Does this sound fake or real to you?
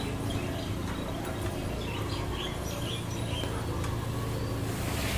real